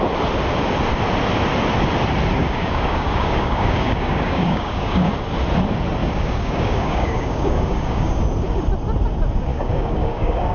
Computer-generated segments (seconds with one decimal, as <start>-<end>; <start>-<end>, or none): 2.4-5.1; 6.0-8.2; 9.5-10.5